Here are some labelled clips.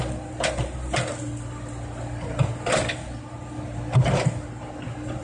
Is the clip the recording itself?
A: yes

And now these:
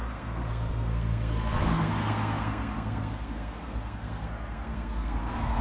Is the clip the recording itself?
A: no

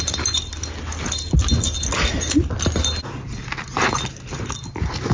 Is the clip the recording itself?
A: yes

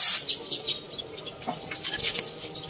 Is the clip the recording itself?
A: yes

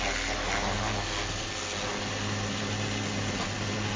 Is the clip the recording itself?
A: yes